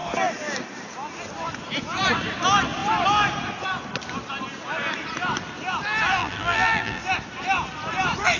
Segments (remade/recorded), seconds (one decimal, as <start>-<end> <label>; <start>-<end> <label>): 0.0-6.2 recorded; 6.2-7.0 remade; 7.0-8.4 recorded